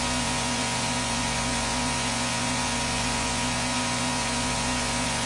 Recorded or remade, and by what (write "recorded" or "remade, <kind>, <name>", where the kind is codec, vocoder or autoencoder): remade, vocoder, Vocos